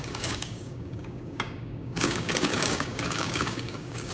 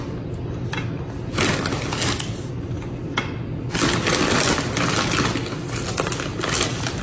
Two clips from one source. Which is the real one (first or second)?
second